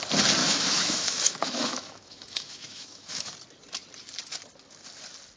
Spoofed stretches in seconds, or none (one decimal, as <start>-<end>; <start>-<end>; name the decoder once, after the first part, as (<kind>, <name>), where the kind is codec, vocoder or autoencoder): 0.4-3.3 (autoencoder, DAC-VAE)